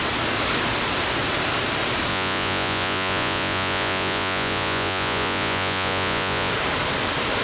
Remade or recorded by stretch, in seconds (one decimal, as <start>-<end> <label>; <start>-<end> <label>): 0.0-2.1 recorded; 2.1-6.5 remade; 6.5-7.4 recorded